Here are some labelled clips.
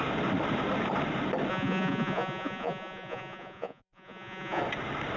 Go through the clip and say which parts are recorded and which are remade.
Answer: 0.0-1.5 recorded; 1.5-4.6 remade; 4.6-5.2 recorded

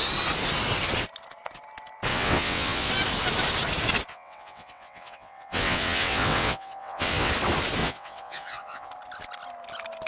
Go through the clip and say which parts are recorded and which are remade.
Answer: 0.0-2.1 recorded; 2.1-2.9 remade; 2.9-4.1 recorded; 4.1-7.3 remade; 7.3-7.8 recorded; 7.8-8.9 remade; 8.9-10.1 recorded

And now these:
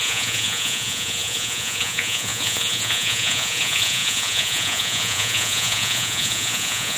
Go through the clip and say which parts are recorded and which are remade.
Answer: 0.0-7.0 remade

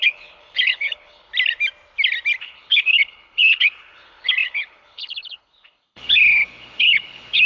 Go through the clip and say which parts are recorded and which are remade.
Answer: 0.0-1.3 remade; 1.3-2.4 recorded; 2.4-7.5 remade

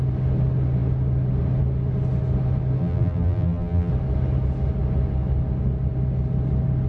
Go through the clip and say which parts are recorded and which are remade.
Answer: 0.0-2.8 recorded; 2.8-3.9 remade; 3.9-6.9 recorded

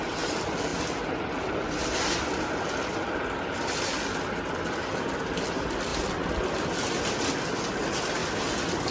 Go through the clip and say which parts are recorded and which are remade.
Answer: 0.0-8.9 recorded

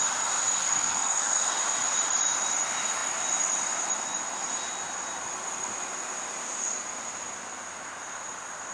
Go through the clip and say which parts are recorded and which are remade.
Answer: 0.0-0.6 recorded; 0.6-1.5 remade; 1.5-8.7 recorded